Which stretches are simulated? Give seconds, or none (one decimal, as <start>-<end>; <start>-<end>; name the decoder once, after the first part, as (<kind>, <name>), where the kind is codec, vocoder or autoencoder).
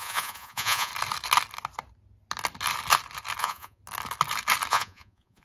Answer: 0.0-0.9 (vocoder, Vocos); 3.4-3.8; 4.7-5.4